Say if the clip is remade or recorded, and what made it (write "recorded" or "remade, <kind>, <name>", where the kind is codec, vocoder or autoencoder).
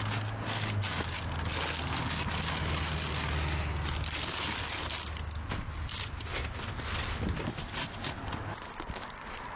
recorded